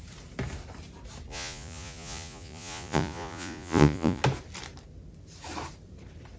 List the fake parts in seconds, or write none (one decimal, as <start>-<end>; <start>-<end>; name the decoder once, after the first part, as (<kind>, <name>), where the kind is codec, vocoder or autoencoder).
1.3-4.2 (vocoder, Vocos)